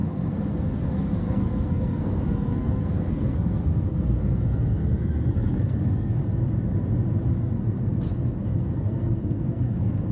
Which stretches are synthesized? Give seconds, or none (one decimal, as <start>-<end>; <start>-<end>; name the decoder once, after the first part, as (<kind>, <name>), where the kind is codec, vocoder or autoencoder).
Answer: 0.0-6.2 (codec, SNAC); 7.3-10.1